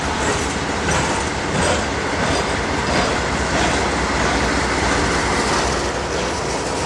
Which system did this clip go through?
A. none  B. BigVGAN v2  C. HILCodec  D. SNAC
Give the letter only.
A